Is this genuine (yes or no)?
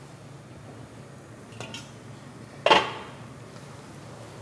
yes